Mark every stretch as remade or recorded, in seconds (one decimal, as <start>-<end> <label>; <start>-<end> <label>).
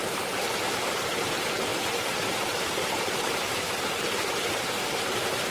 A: 0.0-5.5 remade